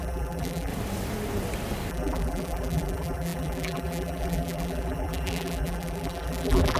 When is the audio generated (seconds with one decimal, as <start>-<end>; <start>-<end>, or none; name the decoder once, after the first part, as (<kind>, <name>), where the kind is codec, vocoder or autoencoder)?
0.0-0.7 (vocoder, BigVGAN v2); 1.9-6.8

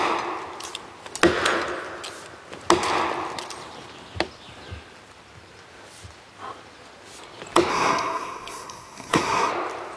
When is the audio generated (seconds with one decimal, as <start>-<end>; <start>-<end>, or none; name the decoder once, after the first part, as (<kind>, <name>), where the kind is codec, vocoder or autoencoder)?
7.7-9.5 (codec, SNAC)

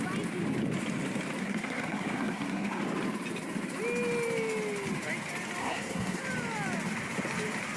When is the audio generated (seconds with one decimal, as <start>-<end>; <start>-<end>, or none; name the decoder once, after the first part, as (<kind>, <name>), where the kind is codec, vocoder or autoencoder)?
1.4-2.8 (codec, SNAC); 5.6-6.2